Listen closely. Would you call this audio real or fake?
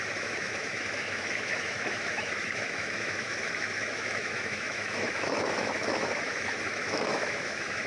fake